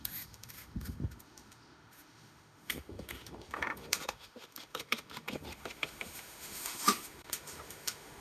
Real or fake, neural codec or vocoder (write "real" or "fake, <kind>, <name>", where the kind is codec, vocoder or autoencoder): fake, autoencoder, DAC-VAE